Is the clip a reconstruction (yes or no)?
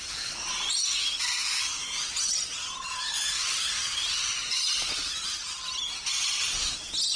no